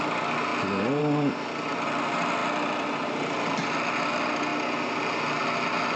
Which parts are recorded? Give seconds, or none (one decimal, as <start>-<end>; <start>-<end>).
0.0-2.4; 4.0-6.0